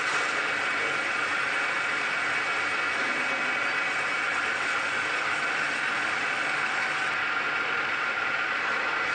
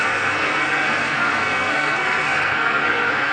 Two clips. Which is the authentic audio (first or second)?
first